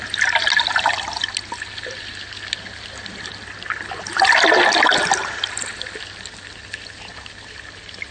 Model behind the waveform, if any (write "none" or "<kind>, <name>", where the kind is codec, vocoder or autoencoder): none